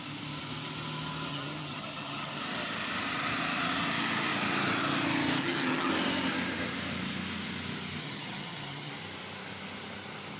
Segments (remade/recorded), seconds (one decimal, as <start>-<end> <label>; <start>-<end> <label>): 0.0-1.3 recorded; 1.3-2.4 remade; 2.4-5.4 recorded; 5.4-5.9 remade; 5.9-8.0 recorded; 8.0-8.9 remade; 8.9-10.4 recorded